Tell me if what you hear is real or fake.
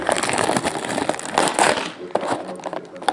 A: real